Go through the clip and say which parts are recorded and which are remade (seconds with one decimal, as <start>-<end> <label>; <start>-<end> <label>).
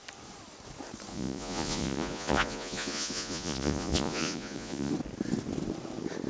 0.0-1.1 recorded; 1.1-4.9 remade; 4.9-6.3 recorded